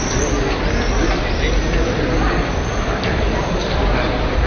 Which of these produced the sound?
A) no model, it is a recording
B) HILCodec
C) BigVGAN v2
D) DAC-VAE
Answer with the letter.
A